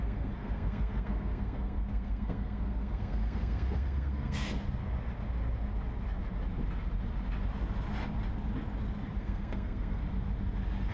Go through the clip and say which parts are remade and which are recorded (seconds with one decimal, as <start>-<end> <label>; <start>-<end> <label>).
0.0-4.5 remade; 4.5-9.2 recorded; 9.2-10.0 remade; 10.0-10.9 recorded